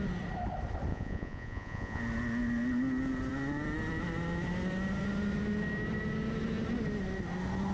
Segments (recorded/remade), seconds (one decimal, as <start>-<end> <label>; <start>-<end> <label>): 0.0-0.9 recorded; 0.9-2.0 remade; 2.0-7.7 recorded